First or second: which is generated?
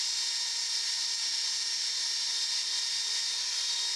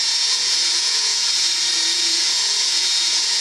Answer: second